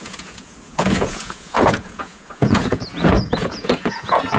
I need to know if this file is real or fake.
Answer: fake